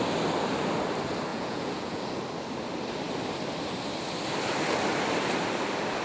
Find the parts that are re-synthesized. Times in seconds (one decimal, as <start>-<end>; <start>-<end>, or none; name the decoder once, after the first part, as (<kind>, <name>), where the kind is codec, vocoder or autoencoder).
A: 1.3-2.0 (vocoder, Vocos)